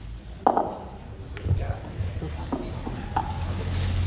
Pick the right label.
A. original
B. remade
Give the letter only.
A